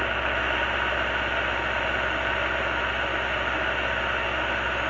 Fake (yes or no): no